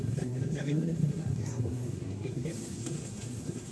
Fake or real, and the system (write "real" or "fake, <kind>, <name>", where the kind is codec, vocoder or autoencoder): fake, codec, SNAC